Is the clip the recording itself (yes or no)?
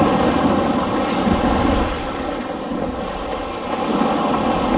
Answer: yes